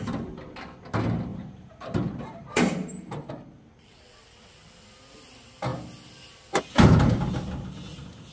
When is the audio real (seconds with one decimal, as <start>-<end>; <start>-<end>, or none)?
0.0-1.3; 3.3-8.3